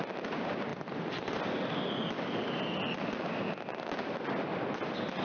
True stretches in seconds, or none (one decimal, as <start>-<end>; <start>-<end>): 0.0-5.2